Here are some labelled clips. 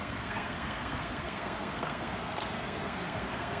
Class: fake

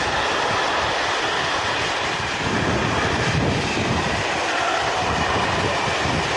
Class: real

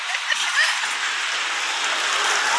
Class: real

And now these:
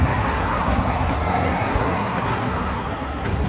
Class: fake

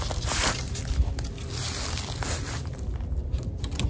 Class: real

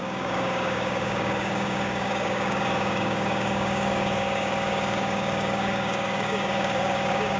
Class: fake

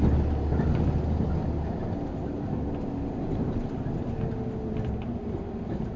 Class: real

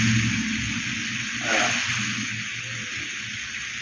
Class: real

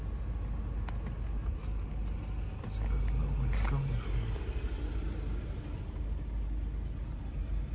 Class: real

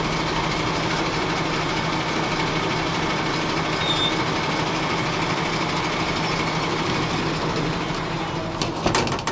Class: real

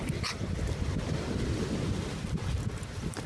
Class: fake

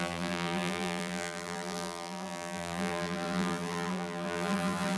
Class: fake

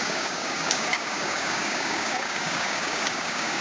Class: fake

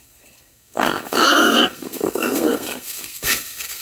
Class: fake